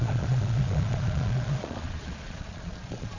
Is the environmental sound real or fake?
fake